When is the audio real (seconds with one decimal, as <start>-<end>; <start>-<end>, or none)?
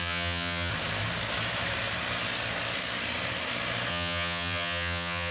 0.7-3.9